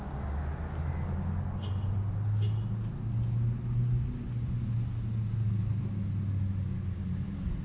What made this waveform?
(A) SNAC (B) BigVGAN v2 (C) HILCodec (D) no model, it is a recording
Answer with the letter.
D